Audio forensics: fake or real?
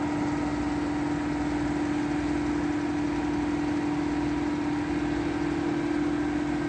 real